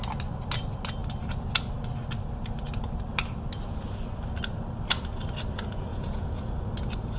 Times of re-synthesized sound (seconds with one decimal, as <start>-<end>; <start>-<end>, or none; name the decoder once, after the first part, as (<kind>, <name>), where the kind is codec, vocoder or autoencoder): 5.9-6.5 (vocoder, Vocos)